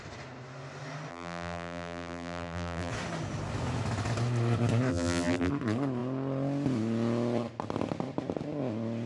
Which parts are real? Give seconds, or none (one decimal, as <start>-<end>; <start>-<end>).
0.0-1.1; 2.9-4.9; 5.5-9.1